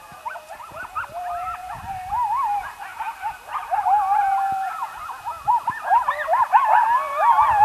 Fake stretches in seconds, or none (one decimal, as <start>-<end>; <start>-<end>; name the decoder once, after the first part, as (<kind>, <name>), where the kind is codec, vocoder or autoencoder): 0.0-2.9 (vocoder, BigVGAN v2); 3.4-7.6